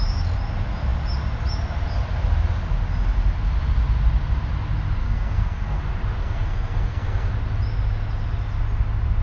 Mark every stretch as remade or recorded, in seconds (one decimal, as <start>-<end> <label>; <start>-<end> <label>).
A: 0.0-5.0 recorded; 5.0-5.8 remade; 5.8-6.2 recorded; 6.2-7.3 remade; 7.3-9.2 recorded